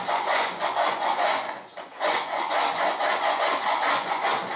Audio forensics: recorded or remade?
remade